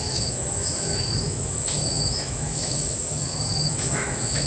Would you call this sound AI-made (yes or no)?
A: yes